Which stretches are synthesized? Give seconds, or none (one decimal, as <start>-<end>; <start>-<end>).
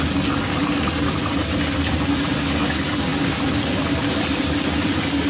none